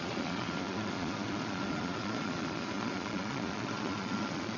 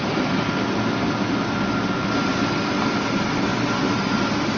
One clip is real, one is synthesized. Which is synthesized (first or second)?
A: first